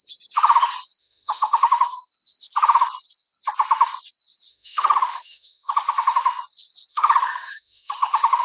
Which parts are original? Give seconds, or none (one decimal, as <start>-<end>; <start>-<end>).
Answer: 0.0-1.0; 2.0-4.5; 5.9-6.9